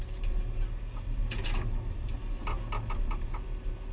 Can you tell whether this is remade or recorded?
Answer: recorded